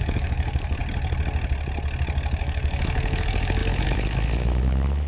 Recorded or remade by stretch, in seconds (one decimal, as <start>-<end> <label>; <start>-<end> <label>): 0.0-0.8 remade; 0.8-2.4 recorded; 2.4-5.1 remade